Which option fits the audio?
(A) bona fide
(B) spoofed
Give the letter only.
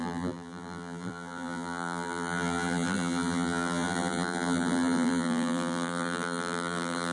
B